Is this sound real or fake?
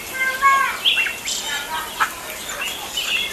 fake